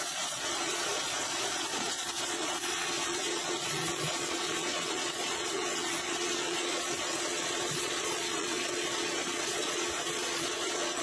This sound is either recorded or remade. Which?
remade